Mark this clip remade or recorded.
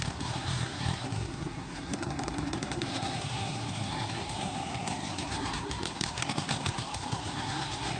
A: remade